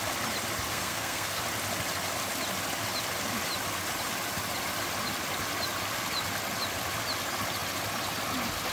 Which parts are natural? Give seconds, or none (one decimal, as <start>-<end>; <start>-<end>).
0.0-0.7; 1.4-8.7